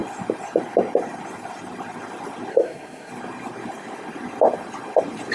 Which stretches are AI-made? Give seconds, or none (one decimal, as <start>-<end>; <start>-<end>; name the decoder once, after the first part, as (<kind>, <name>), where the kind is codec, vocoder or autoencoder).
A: 2.5-3.1 (codec, SNAC)